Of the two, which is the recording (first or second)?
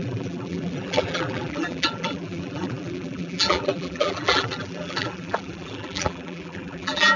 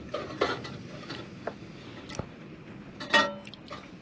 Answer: second